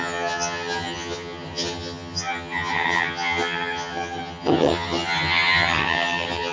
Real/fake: fake